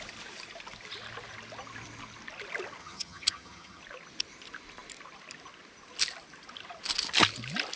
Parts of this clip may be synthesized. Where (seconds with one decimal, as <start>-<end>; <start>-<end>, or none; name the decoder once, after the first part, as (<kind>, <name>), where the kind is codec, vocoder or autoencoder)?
2.8-3.8 (vocoder, HiFi-GAN)